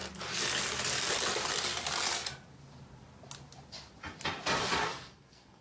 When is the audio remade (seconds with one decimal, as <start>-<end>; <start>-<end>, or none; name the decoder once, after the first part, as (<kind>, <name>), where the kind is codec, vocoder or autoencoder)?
4.8-5.6 (codec, SNAC)